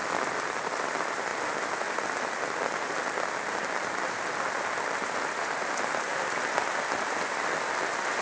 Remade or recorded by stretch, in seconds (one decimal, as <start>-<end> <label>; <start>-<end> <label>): 0.0-8.2 recorded

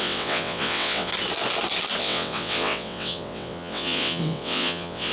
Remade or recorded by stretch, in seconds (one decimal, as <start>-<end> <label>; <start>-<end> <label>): 0.0-1.1 remade; 1.1-2.0 recorded; 2.0-5.1 remade

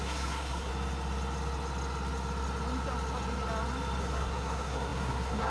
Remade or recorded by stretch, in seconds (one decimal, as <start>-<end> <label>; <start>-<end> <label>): 0.0-0.7 remade; 0.7-4.0 recorded; 4.0-5.5 remade

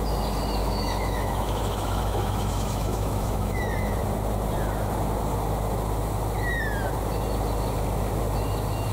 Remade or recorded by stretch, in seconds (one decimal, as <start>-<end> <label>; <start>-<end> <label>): 0.0-0.6 recorded; 0.6-3.6 remade; 3.6-8.9 recorded

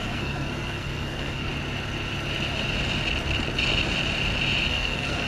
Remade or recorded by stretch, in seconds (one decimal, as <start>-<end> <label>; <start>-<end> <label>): 0.0-1.5 remade; 1.5-4.7 recorded; 4.7-5.3 remade

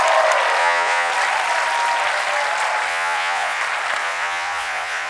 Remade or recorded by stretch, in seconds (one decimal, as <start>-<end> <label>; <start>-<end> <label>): 0.0-0.6 recorded; 0.6-1.1 remade; 1.1-2.9 recorded; 2.9-3.6 remade; 3.6-4.0 recorded; 4.0-5.1 remade

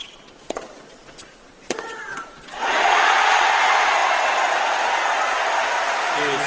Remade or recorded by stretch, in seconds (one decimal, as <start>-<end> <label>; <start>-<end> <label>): 0.0-3.5 remade; 3.5-6.5 recorded

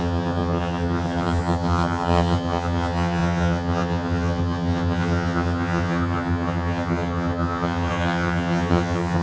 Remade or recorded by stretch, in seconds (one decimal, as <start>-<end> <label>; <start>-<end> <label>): 0.0-9.2 remade